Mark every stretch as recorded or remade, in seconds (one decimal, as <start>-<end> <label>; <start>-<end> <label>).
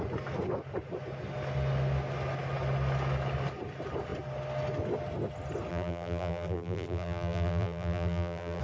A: 0.0-5.7 recorded; 5.7-8.6 remade